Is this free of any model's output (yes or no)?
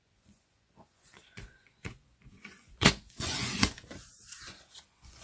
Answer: no